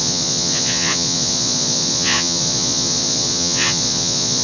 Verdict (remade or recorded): remade